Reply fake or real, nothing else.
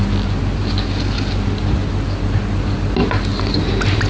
real